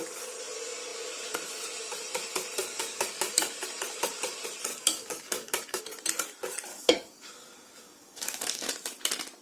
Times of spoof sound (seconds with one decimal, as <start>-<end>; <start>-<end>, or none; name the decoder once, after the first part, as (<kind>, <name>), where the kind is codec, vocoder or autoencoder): 2.6-3.6 (codec, DAC); 4.7-5.8; 6.7-8.7